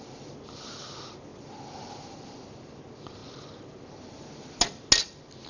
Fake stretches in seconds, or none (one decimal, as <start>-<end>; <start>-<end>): none